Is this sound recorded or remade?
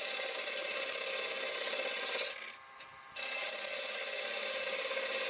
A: recorded